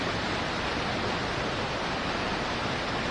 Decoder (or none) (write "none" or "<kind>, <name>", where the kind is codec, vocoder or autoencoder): none